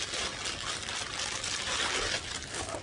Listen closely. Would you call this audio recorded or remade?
recorded